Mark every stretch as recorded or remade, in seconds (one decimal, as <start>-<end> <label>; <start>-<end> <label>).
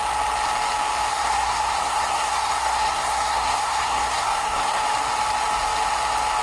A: 0.0-1.1 recorded; 1.1-4.8 remade; 4.8-6.4 recorded